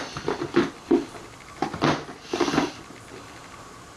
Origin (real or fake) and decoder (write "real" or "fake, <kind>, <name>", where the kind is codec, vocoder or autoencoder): real